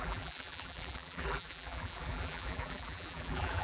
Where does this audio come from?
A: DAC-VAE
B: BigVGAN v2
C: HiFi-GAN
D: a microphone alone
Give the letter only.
B